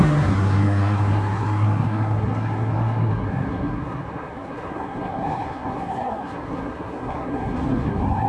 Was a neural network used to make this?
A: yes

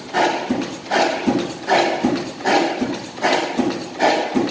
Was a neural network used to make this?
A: no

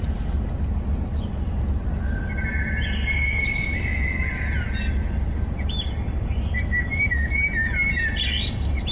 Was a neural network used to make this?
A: no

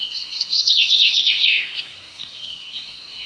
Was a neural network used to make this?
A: yes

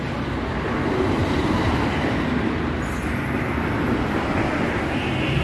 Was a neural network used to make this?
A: no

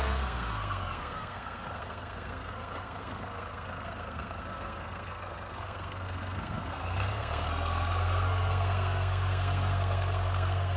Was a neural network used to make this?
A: yes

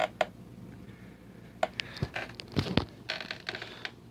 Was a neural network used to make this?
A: no